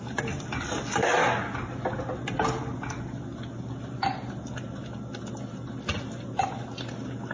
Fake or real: real